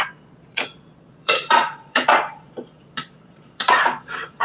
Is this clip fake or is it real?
fake